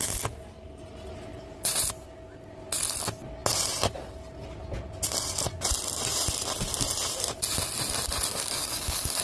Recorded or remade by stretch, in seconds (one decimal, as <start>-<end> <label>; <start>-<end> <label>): 0.0-8.3 recorded; 8.3-9.2 remade